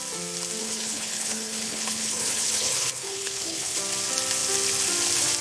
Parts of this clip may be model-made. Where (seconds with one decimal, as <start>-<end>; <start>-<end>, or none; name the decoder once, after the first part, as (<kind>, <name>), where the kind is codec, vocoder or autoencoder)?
0.6-3.8 (codec, HILCodec)